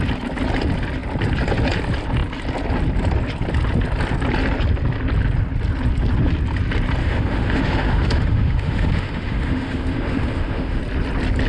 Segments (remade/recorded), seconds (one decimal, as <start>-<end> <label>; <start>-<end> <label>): 0.0-7.0 recorded; 7.0-10.8 remade; 10.8-11.5 recorded